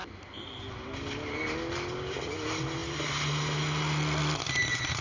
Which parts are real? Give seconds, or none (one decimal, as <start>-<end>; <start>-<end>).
0.0-5.0